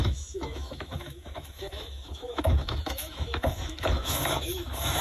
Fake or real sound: fake